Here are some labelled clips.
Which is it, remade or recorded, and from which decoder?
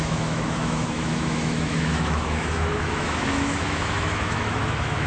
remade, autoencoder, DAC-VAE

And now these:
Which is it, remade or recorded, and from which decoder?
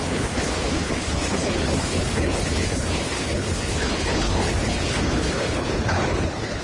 remade, codec, HILCodec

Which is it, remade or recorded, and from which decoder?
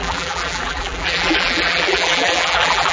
remade, vocoder, BigVGAN v2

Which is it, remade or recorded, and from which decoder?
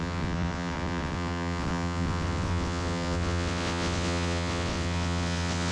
remade, vocoder, WaveNeXt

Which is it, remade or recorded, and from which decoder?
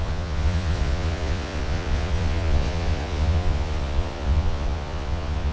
remade, vocoder, Vocos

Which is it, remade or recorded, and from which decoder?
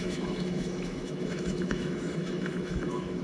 remade, autoencoder, DAC-VAE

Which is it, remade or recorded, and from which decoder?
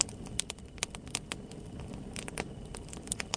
recorded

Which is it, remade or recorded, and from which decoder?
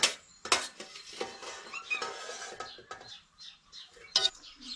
recorded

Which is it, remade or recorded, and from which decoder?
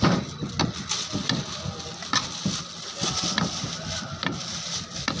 recorded